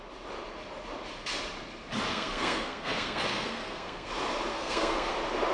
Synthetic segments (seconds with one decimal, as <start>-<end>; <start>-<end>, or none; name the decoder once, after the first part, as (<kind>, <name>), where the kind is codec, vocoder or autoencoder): 2.1-4.1 (codec, SNAC); 4.5-5.1